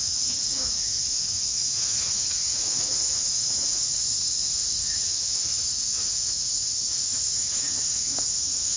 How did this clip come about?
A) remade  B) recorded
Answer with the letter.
A